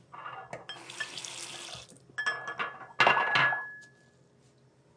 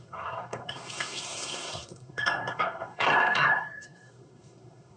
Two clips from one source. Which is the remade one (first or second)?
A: second